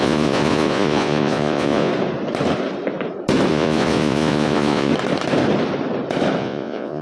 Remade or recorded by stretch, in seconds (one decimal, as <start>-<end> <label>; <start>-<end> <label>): 0.0-1.9 remade; 1.9-3.5 recorded; 3.5-4.9 remade; 4.9-6.4 recorded; 6.4-7.0 remade